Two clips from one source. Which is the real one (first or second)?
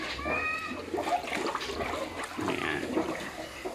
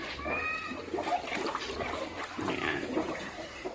first